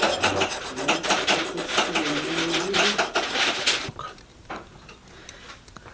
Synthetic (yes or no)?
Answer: yes